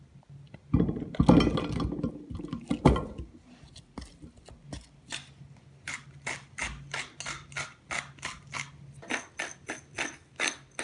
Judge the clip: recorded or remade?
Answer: recorded